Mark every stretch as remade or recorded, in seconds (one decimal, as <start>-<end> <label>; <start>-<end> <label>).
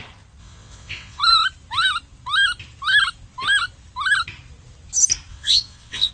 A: 0.0-0.4 recorded; 0.4-1.2 remade; 1.2-5.3 recorded; 5.3-6.1 remade